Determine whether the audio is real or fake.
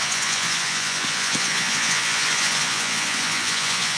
fake